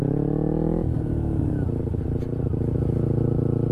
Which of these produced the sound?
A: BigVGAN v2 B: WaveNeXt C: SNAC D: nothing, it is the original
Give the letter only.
D